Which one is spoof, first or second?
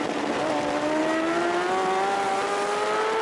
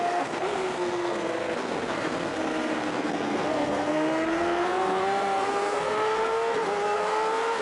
second